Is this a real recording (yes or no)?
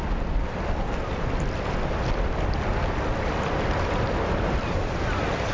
yes